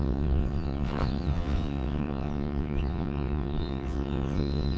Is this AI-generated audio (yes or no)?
yes